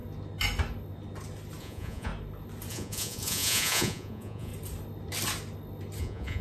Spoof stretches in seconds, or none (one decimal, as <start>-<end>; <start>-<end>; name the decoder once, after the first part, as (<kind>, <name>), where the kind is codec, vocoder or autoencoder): 1.6-2.1 (vocoder, Vocos); 2.7-4.5; 6.0-6.4